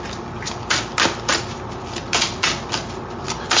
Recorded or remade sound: recorded